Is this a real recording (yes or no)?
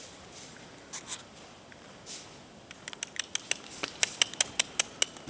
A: yes